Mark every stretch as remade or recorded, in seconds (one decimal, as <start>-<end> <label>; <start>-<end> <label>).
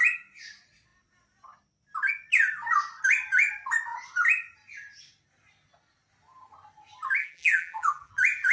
0.0-7.2 recorded; 7.2-8.1 remade; 8.1-8.5 recorded